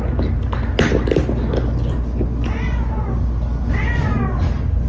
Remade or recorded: recorded